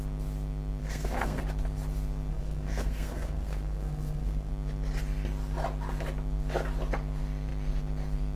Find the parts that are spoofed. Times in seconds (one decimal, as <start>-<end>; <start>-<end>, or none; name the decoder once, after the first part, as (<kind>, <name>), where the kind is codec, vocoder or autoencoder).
0.8-1.4 (codec, SNAC); 2.3-4.5